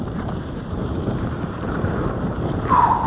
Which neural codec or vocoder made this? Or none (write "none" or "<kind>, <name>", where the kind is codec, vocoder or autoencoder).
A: vocoder, BigVGAN v2